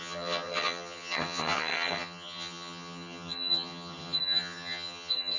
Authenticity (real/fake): fake